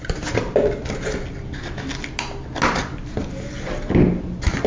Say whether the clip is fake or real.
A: real